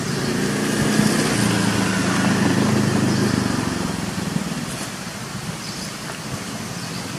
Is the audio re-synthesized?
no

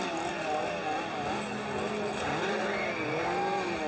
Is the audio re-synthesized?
no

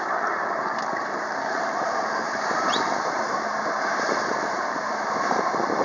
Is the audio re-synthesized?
yes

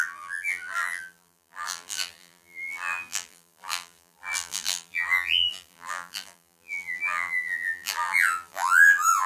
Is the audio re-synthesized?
yes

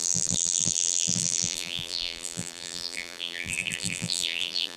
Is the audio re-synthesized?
yes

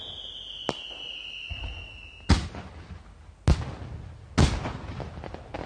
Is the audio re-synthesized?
no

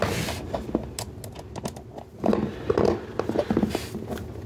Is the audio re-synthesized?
no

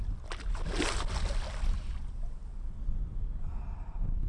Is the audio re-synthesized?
no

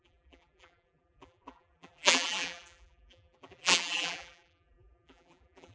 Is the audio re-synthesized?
yes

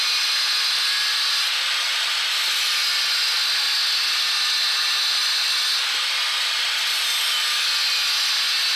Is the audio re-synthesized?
no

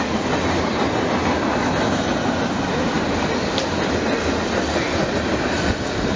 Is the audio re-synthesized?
no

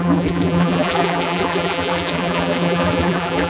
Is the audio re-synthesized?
yes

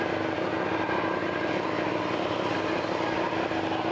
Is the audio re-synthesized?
no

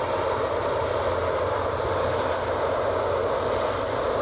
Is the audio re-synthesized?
no